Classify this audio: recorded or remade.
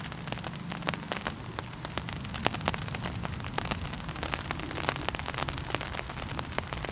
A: recorded